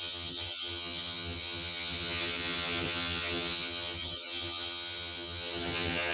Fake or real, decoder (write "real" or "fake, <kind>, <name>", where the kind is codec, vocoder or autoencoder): fake, vocoder, HiFi-GAN